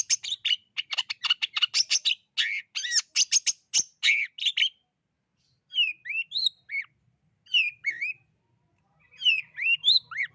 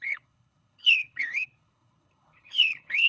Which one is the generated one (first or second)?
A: second